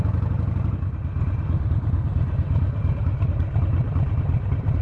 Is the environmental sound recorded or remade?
recorded